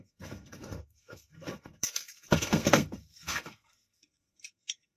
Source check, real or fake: fake